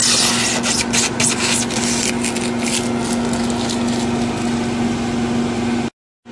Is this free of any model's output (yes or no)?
yes